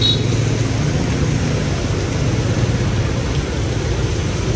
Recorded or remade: recorded